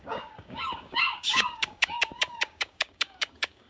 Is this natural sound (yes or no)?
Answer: no